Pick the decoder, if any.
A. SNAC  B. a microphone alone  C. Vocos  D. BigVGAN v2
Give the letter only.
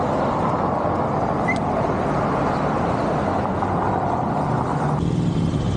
B